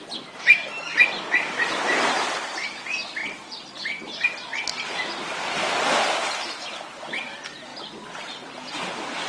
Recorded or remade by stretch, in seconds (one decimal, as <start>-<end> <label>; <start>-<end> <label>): 0.0-3.2 recorded; 3.2-3.7 remade; 3.7-9.3 recorded